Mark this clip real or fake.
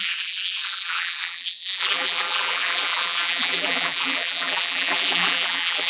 fake